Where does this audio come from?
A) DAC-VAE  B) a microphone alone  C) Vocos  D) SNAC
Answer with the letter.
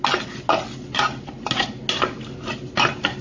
B